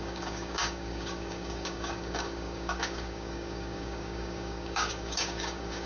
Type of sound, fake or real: fake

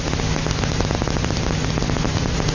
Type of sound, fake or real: real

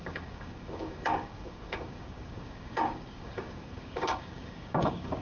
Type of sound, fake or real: fake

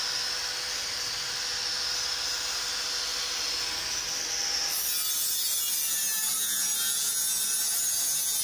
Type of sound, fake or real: real